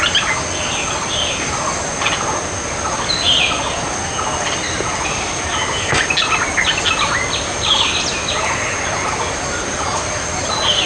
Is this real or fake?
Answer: real